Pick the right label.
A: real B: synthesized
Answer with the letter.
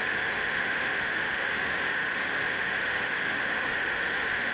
B